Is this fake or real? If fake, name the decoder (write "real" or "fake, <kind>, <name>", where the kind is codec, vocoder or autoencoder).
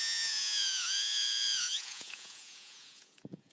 fake, vocoder, Vocos